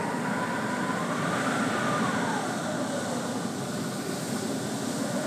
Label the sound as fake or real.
real